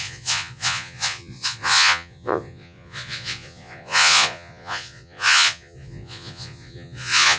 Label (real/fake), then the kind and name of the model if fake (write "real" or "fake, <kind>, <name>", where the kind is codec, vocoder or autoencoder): fake, vocoder, Vocos